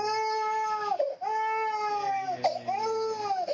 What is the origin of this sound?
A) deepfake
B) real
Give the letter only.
B